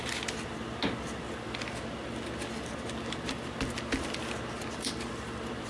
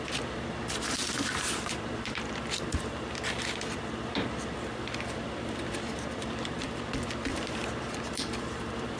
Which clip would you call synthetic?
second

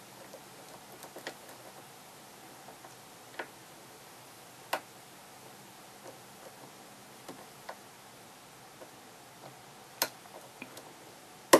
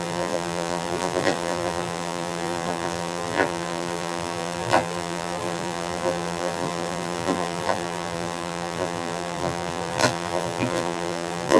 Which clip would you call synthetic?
second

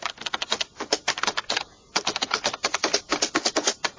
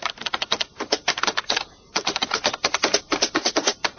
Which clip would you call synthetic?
second